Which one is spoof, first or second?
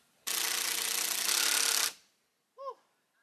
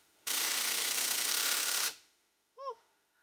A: second